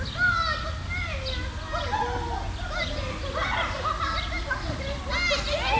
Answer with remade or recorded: recorded